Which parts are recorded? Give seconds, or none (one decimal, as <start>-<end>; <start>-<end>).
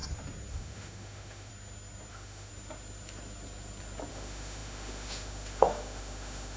0.0-0.5; 1.5-2.1; 2.5-4.1